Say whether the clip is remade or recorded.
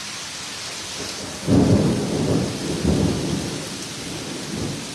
recorded